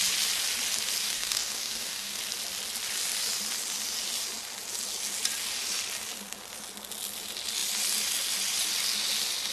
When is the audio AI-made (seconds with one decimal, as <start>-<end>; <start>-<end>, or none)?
1.0-2.2